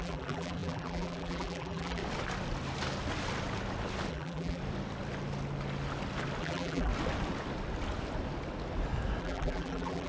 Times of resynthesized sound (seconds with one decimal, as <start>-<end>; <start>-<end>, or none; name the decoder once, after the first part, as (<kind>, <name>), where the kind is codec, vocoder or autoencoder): 0.0-2.0 (vocoder, BigVGAN v2); 4.1-4.6; 6.4-6.9; 9.2-10.1